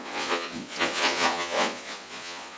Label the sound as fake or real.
fake